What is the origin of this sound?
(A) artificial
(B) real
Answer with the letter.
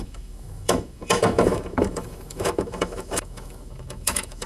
A